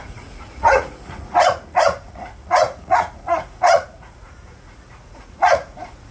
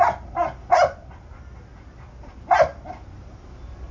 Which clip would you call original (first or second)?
second